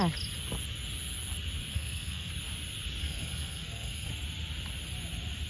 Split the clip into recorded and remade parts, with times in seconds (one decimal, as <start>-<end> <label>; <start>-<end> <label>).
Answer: 0.0-1.7 recorded; 1.7-2.3 remade; 2.3-3.0 recorded; 3.0-4.1 remade; 4.1-5.5 recorded